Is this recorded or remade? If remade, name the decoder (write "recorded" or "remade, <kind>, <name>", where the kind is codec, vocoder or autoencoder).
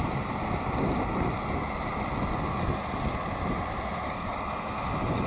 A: recorded